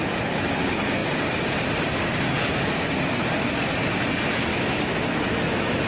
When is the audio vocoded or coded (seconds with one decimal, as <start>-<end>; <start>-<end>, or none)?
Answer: 4.5-5.9